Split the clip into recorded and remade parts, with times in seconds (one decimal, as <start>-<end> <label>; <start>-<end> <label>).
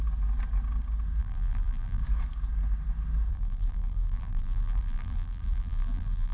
0.0-1.2 recorded; 1.2-2.0 remade; 2.0-3.3 recorded; 3.3-6.3 remade